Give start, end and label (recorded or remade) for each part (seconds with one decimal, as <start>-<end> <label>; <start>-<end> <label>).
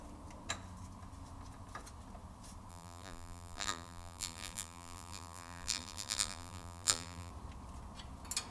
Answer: 0.0-2.7 recorded; 2.7-7.3 remade; 7.3-8.5 recorded